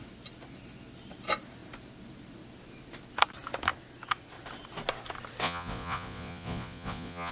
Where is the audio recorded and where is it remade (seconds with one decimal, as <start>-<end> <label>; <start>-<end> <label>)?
0.0-5.4 recorded; 5.4-7.3 remade